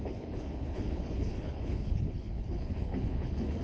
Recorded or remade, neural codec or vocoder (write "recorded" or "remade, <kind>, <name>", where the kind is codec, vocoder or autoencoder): remade, codec, HILCodec